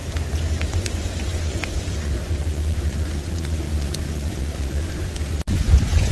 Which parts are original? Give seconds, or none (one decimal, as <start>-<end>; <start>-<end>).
0.0-0.7